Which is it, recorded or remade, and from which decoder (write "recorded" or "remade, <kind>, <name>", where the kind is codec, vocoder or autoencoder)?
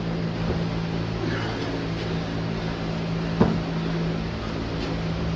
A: recorded